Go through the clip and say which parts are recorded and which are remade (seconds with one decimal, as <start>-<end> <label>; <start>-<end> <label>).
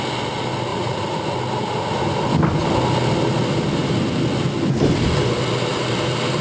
0.0-0.7 recorded; 0.7-1.2 remade; 1.2-6.4 recorded